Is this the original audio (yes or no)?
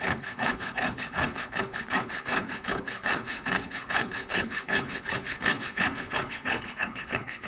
no